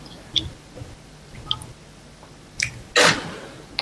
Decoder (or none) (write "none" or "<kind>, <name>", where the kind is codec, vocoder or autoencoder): none